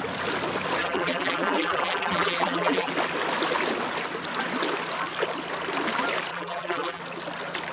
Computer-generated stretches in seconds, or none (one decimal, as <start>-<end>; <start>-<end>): 0.8-2.9; 6.3-7.0